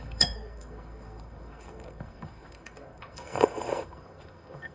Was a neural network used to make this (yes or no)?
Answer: yes